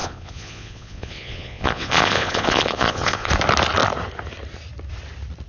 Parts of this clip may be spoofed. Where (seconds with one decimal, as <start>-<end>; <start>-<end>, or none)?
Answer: 0.0-3.3